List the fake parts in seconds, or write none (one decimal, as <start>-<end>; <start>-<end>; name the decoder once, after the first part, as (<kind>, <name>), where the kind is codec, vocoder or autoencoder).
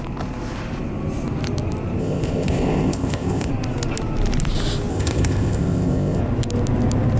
2.0-3.5 (codec, ZipCodec); 4.9-6.2